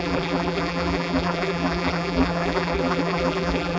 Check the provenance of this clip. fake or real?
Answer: fake